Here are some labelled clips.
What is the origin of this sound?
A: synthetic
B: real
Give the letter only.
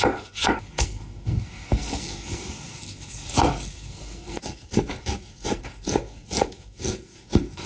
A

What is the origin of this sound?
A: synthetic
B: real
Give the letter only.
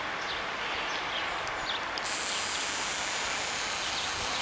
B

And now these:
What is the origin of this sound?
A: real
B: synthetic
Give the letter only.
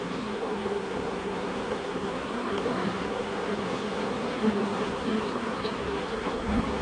B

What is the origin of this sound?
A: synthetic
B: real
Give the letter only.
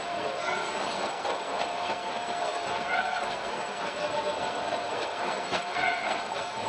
A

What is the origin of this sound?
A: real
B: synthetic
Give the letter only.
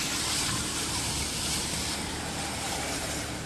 A